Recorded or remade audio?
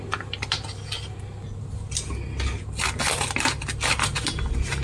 recorded